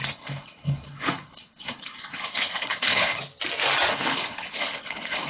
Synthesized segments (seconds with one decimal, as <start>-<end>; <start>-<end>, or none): 0.0-3.2; 3.9-5.3

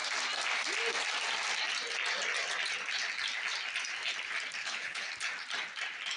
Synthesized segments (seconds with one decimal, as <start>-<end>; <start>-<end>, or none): 4.6-5.1

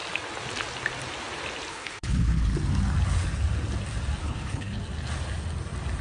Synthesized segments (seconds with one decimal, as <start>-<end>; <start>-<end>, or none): 1.7-2.5; 4.2-4.8

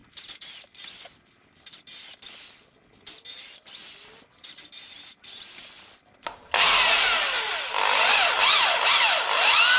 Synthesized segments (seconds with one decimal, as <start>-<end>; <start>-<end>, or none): none

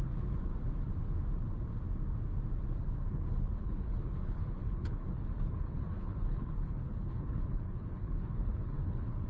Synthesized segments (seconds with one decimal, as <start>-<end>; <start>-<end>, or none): 0.0-0.5; 3.1-9.3

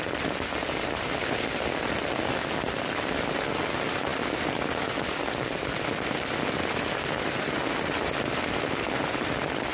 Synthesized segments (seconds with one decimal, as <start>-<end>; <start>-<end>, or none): none

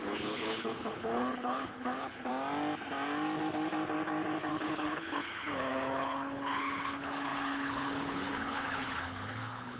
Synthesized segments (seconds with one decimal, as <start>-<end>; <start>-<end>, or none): 0.0-2.3; 4.5-9.8